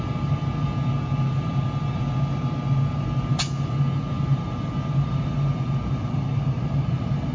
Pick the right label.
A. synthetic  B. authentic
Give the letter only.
B